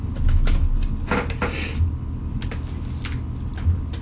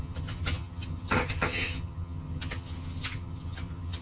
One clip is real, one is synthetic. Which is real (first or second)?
first